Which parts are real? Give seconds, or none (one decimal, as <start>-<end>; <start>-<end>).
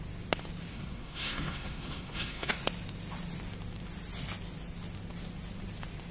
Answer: 0.0-0.7; 2.5-6.1